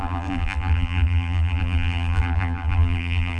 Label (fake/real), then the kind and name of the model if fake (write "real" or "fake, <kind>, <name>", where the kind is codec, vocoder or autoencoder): fake, vocoder, BigVGAN v2